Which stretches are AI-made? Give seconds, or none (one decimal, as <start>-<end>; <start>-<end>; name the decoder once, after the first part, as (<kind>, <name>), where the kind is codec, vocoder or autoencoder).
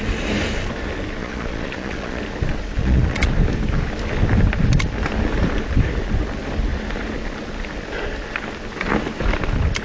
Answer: 1.2-2.2 (vocoder, Vocos); 2.8-3.3